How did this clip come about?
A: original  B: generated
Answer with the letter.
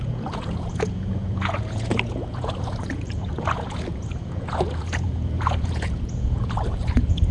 B